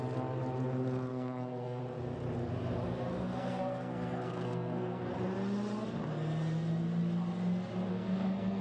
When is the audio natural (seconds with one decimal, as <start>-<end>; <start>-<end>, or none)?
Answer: 0.0-1.1; 1.8-3.1; 5.1-7.9